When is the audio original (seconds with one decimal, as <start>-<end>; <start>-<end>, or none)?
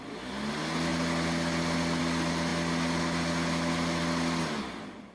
0.0-5.1